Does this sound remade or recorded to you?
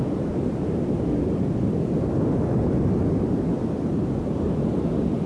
recorded